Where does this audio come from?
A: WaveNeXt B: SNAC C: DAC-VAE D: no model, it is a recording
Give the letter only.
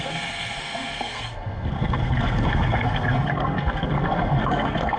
B